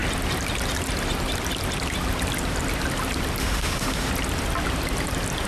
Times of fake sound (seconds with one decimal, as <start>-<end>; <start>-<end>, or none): 3.4-4.1